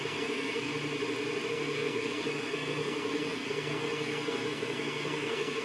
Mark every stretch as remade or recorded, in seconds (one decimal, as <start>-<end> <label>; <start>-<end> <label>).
0.0-0.7 remade; 0.7-1.5 recorded; 1.5-5.6 remade